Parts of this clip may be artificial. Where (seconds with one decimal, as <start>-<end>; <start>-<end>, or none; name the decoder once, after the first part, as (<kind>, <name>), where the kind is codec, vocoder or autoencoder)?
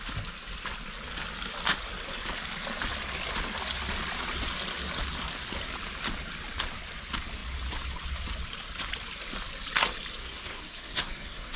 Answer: 10.2-11.6 (codec, SNAC)